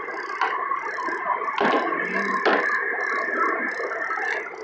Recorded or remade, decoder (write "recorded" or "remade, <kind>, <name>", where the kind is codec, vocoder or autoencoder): recorded